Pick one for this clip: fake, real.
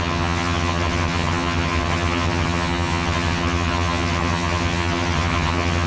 fake